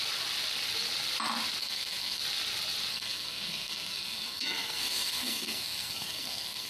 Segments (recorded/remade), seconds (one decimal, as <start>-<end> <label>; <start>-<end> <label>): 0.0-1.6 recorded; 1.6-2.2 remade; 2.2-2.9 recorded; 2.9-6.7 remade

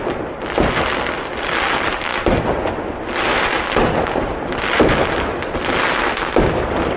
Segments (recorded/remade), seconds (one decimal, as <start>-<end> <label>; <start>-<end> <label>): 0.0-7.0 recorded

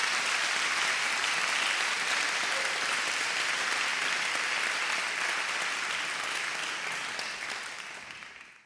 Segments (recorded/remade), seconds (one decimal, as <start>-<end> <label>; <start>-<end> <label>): 0.0-8.7 recorded